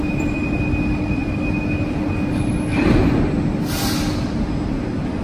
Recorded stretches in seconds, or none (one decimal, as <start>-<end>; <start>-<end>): 0.0-5.2